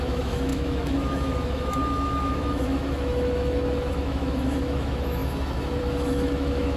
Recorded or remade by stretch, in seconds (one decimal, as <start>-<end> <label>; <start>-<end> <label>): 0.0-6.8 remade